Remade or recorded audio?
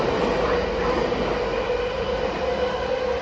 recorded